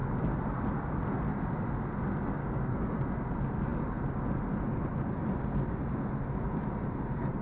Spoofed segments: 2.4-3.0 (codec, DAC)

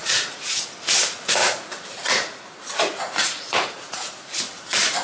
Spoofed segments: 0.0-0.6 (vocoder, Vocos); 1.4-4.4